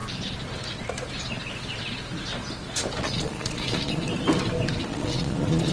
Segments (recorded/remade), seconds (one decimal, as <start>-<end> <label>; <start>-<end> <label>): 0.0-3.0 recorded; 3.0-4.0 remade; 4.0-4.9 recorded; 4.9-5.7 remade